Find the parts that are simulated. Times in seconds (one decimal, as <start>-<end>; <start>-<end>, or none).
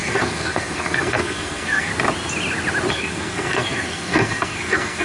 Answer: 0.0-1.9; 2.9-5.0